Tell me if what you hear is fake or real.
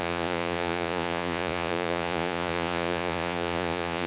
fake